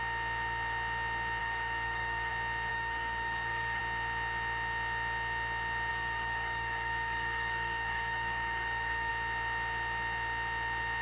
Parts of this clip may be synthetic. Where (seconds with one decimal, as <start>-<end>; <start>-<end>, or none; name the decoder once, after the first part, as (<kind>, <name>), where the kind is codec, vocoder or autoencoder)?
1.4-2.3 (codec, DAC); 2.7-3.8; 5.9-9.1